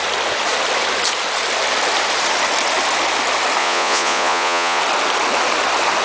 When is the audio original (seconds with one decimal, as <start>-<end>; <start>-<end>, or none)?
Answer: 0.0-3.6; 4.8-6.0